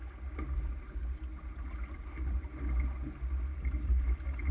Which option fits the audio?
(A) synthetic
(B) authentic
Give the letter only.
B